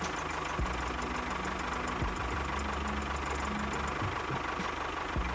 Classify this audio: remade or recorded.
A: recorded